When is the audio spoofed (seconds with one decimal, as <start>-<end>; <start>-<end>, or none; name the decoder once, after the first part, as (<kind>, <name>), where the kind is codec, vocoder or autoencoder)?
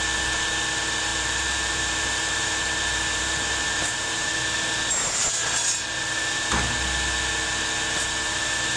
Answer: 1.1-4.3 (vocoder, BigVGAN v2)